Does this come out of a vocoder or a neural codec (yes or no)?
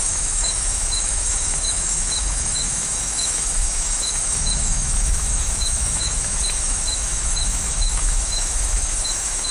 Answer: yes